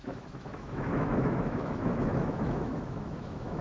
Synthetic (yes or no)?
yes